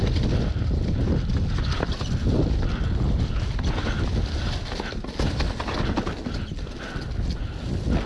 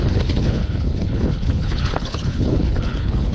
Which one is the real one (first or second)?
first